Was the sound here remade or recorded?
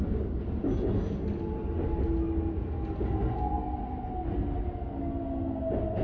recorded